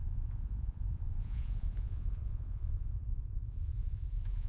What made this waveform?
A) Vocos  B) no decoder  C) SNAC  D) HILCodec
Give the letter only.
A